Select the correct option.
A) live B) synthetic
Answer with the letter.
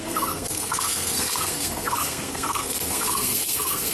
B